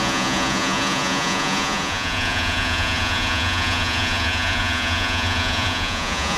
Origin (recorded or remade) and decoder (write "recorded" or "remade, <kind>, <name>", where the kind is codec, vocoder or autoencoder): remade, vocoder, Vocos